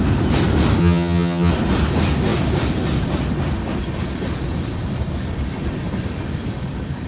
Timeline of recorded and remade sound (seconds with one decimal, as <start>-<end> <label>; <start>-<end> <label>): 0.0-0.8 recorded; 0.8-1.5 remade; 1.5-7.1 recorded